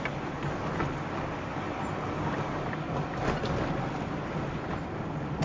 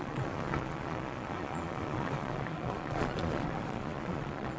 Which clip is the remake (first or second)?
second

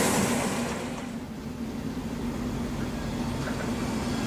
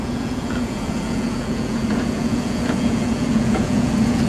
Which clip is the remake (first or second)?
second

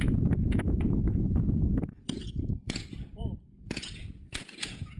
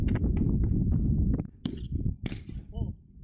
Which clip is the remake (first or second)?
first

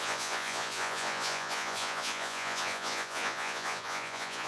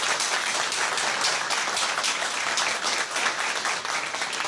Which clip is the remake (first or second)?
first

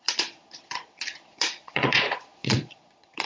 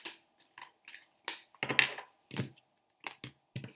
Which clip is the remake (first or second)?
first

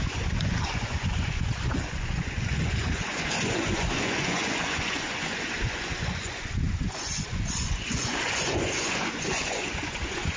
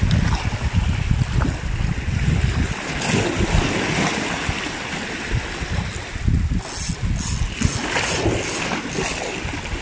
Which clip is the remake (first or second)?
first